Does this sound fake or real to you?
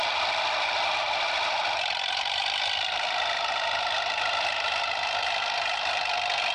real